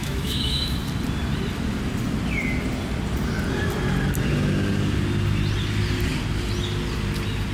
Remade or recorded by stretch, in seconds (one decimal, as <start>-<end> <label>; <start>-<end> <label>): 0.0-0.8 remade; 0.8-7.5 recorded